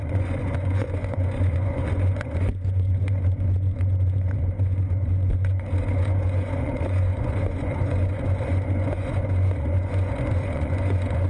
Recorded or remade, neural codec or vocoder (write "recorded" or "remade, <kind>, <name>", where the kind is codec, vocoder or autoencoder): remade, vocoder, Vocos